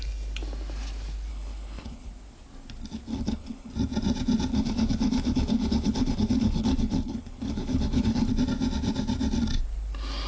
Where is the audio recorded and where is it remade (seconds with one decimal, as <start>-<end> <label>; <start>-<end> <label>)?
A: 0.0-1.3 recorded; 1.3-2.1 remade; 2.1-3.1 recorded; 3.1-3.7 remade; 3.7-4.5 recorded; 4.5-8.3 remade; 8.3-10.3 recorded